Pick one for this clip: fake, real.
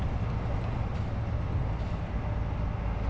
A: real